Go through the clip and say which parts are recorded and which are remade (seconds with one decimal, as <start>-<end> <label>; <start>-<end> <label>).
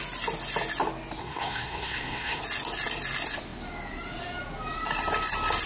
0.0-1.2 recorded; 1.2-2.4 remade; 2.4-5.7 recorded